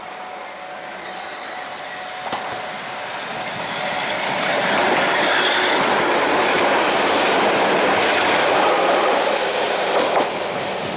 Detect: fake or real real